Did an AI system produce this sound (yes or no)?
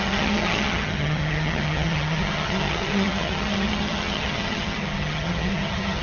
yes